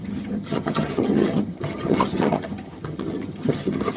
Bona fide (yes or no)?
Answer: no